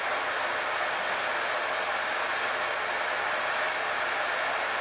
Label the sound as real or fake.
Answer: real